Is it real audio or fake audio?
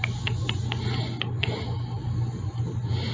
real